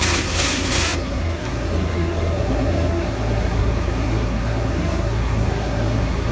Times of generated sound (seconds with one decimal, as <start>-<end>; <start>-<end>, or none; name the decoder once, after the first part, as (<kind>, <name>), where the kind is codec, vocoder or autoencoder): 0.0-6.3 (codec, SNAC)